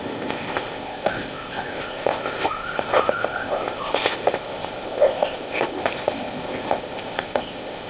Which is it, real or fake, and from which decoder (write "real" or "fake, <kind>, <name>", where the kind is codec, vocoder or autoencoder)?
fake, codec, ZipCodec